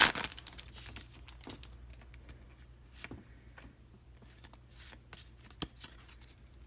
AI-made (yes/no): no